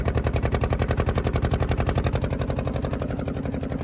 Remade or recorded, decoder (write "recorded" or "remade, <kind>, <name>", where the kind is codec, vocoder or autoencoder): recorded